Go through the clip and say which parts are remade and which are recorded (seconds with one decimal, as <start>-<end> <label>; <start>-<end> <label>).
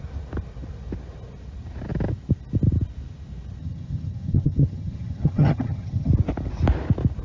0.0-3.6 recorded; 3.6-6.1 remade; 6.1-7.2 recorded